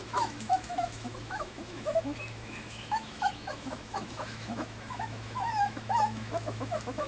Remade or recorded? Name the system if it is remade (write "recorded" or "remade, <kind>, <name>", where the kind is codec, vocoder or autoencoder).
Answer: remade, autoencoder, DAC-VAE